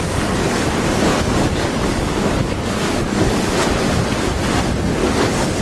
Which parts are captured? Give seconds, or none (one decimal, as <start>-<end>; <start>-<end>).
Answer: 0.0-1.1; 3.4-5.0